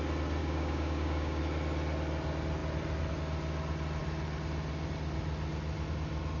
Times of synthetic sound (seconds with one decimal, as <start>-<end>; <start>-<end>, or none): 0.4-1.4